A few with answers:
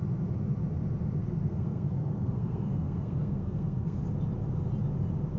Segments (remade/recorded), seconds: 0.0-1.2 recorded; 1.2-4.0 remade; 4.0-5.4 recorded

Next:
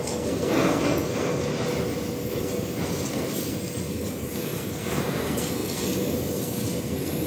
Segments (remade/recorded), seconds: 0.0-1.5 remade; 1.5-2.2 recorded; 2.2-7.3 remade

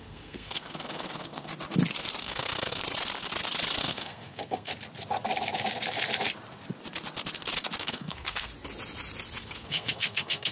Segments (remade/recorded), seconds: 0.0-1.5 remade; 1.5-2.2 recorded; 2.2-2.8 remade; 2.8-3.8 recorded; 3.8-4.7 remade; 4.7-7.8 recorded; 7.8-8.5 remade; 8.5-9.4 recorded; 9.4-10.5 remade

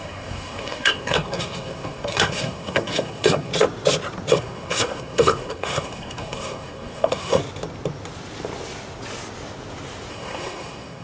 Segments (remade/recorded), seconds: 0.0-3.5 remade; 3.5-4.3 recorded; 4.3-7.4 remade; 7.4-10.1 recorded; 10.1-11.0 remade

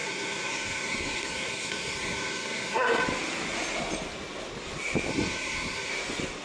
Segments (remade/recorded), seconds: 0.0-3.0 remade; 3.0-5.1 recorded; 5.1-5.9 remade; 5.9-6.4 recorded

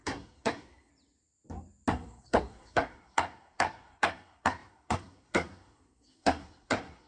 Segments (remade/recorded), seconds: 0.0-0.9 remade; 0.9-1.9 recorded; 1.9-7.1 remade

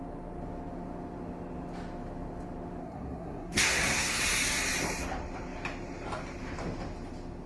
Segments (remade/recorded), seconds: 0.0-2.8 recorded; 2.8-4.2 remade; 4.2-7.5 recorded